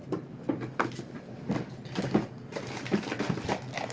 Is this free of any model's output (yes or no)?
yes